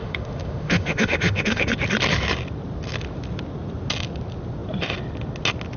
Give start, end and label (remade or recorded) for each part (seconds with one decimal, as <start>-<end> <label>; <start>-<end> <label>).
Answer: 0.0-1.7 remade; 1.7-5.8 recorded